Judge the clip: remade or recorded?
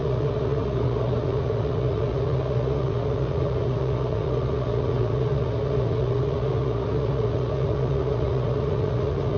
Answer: remade